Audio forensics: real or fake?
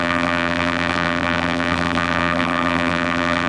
fake